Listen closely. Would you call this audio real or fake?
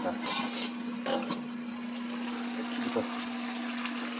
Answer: real